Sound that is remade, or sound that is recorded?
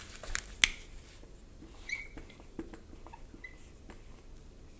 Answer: recorded